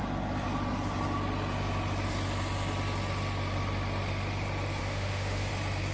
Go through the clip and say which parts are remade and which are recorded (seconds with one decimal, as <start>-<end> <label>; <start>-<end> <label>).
0.0-4.8 recorded; 4.8-5.5 remade; 5.5-5.9 recorded